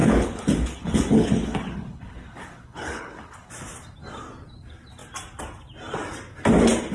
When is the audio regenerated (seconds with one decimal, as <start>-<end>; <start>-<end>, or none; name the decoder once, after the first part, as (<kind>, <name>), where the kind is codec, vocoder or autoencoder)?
0.0-3.5 (codec, HILCodec)